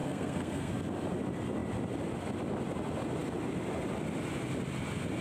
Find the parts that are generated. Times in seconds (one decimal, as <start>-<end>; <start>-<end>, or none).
0.0-0.7